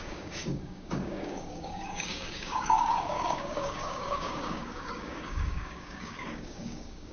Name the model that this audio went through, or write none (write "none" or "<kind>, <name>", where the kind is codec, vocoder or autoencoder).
codec, DAC